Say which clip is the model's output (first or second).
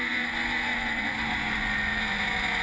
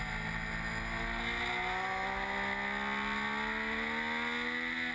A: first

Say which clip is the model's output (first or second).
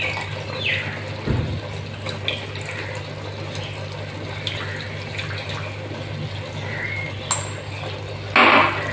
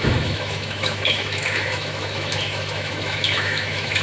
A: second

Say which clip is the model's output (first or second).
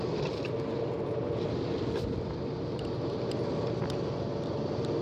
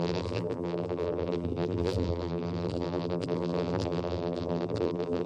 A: second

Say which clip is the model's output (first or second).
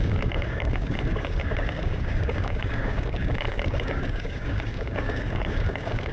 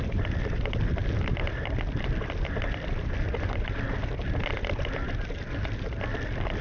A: first